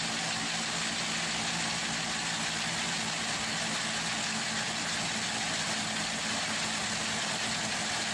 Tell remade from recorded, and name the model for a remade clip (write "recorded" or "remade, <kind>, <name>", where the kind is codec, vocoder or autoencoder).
recorded